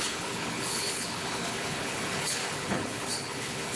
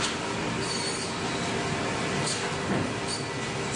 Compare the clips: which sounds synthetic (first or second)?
first